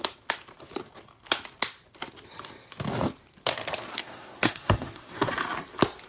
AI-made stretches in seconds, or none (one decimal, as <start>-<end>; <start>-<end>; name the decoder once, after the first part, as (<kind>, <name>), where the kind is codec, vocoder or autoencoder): 3.9-5.3 (codec, SNAC)